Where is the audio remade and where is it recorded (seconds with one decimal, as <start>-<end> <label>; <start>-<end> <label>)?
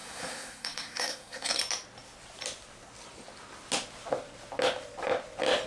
0.0-1.6 remade; 1.6-5.7 recorded